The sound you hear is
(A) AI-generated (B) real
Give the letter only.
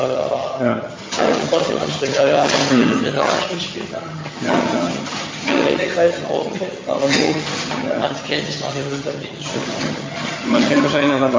A